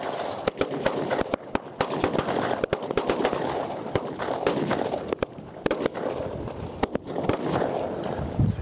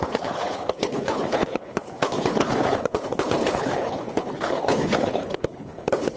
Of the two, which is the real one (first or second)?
first